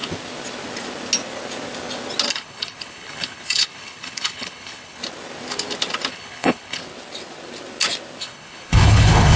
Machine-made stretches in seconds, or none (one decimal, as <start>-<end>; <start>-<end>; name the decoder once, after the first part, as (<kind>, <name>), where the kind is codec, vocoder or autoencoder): 2.3-5.0 (codec, HILCodec); 6.1-6.8; 8.2-9.4